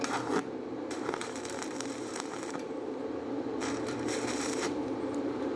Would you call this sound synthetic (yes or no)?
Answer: yes